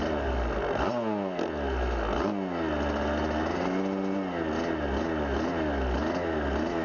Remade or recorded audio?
recorded